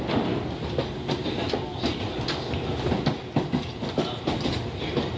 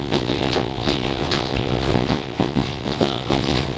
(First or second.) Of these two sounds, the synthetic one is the second